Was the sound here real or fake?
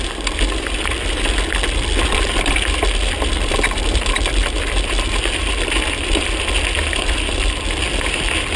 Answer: real